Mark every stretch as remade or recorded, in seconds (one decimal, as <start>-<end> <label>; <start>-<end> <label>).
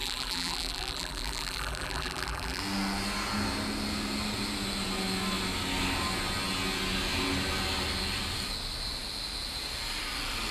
0.0-2.6 remade; 2.6-10.5 recorded